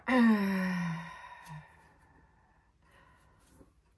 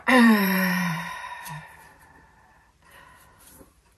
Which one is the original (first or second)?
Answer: first